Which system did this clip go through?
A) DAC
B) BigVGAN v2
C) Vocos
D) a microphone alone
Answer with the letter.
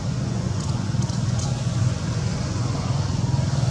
C